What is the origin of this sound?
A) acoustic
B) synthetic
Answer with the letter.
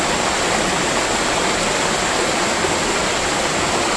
A